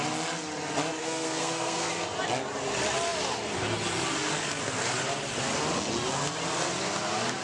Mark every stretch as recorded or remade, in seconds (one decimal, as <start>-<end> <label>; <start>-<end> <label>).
0.0-1.0 recorded; 1.0-1.9 remade; 1.9-7.4 recorded